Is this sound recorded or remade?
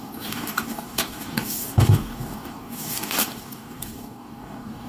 remade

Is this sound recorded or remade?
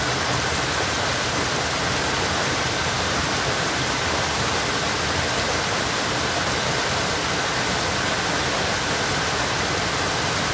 recorded